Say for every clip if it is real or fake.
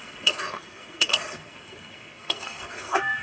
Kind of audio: fake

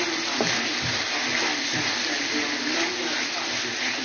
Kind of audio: real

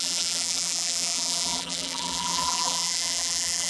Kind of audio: fake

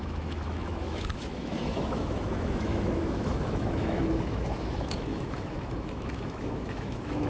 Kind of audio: fake